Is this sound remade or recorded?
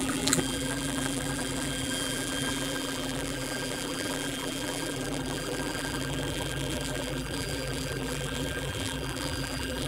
remade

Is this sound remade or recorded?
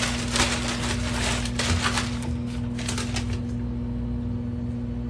recorded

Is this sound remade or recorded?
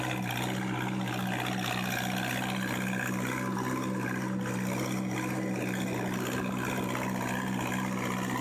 recorded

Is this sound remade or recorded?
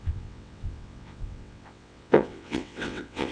remade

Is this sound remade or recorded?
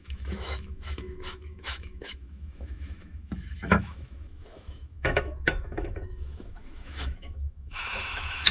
remade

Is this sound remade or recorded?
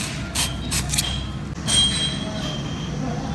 recorded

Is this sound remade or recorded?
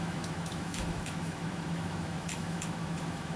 remade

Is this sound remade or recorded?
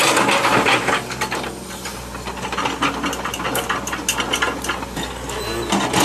recorded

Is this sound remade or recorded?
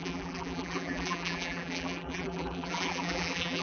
remade